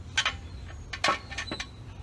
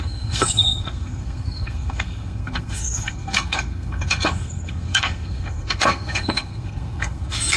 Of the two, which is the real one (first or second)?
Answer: first